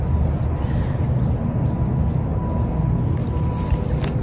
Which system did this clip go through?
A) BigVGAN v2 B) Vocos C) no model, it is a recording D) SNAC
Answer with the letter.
C